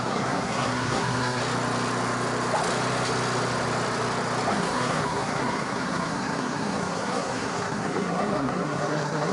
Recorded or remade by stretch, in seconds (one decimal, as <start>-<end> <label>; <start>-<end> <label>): 0.0-1.4 remade; 1.4-4.5 recorded; 4.5-9.3 remade

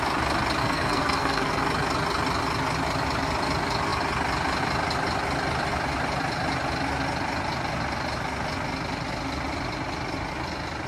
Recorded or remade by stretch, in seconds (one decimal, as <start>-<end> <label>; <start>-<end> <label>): 0.0-0.6 recorded; 0.6-1.6 remade; 1.6-10.9 recorded